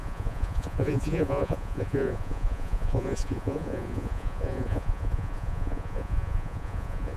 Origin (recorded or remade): remade